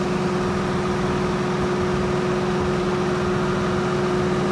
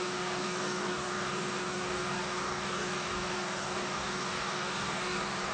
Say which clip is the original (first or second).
first